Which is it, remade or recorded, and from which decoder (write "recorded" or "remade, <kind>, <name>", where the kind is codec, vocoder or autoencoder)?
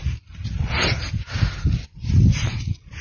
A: recorded